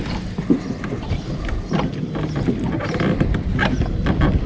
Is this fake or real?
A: real